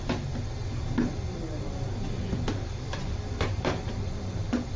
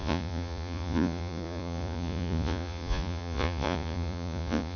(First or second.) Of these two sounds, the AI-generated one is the second